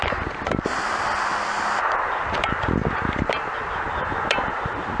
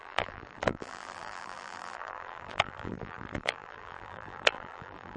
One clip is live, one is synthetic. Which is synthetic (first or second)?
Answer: second